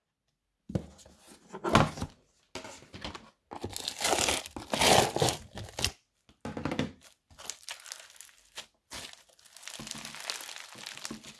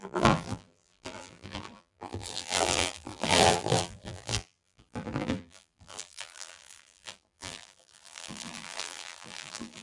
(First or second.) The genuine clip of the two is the first